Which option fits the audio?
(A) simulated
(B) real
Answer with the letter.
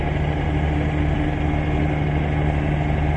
B